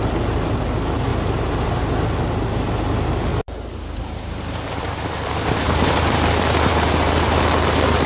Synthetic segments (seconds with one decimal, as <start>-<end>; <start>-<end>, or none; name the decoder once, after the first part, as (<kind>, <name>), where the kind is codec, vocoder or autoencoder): 1.1-1.9 (vocoder, BigVGAN v2); 3.3-7.4